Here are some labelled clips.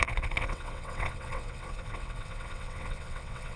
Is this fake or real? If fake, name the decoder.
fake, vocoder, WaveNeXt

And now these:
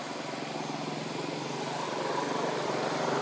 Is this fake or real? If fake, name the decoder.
real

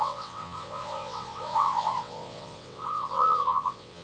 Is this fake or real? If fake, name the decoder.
fake, vocoder, WaveNeXt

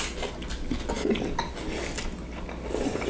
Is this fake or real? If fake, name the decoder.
real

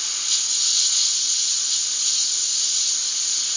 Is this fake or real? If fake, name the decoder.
real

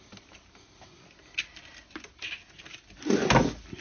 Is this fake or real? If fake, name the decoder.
real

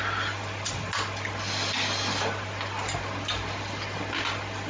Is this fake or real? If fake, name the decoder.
real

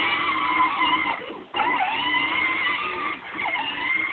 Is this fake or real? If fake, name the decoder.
real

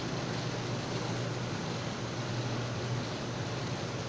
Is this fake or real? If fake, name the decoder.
real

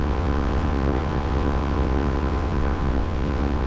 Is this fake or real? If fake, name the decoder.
fake, vocoder, WaveNeXt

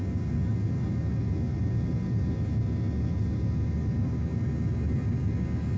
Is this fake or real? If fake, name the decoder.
real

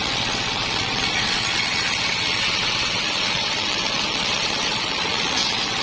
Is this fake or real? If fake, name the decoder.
fake, vocoder, WaveNeXt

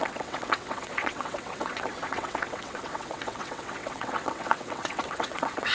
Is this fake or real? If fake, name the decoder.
fake, vocoder, WaveNeXt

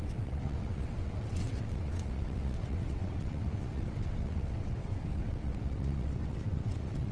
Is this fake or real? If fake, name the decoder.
fake, vocoder, WaveNeXt